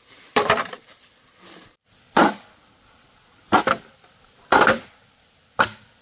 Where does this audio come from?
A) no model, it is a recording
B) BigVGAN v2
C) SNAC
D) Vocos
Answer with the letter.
B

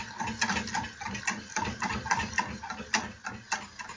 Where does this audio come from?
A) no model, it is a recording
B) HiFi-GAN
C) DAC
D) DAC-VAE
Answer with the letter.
A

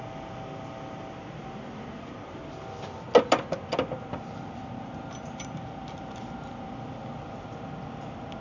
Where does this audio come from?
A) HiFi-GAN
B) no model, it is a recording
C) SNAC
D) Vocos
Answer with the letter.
B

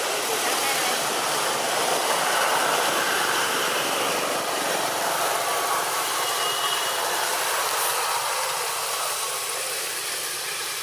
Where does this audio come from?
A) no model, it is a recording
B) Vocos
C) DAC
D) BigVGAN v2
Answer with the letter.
D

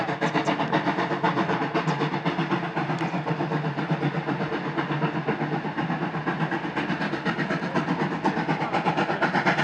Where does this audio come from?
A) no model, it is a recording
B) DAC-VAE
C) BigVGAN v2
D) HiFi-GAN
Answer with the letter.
A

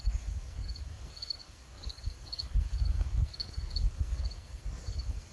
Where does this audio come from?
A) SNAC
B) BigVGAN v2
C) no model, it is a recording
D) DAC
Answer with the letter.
A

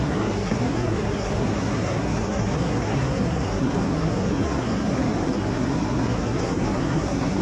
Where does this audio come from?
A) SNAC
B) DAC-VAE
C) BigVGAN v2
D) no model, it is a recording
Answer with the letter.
A